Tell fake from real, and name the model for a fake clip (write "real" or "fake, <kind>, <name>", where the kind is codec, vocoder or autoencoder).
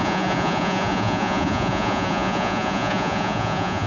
fake, vocoder, Vocos